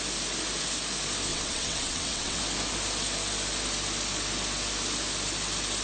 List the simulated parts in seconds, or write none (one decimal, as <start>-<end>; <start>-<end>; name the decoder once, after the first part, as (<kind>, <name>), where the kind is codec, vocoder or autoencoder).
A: 1.3-2.4 (vocoder, WaveNeXt)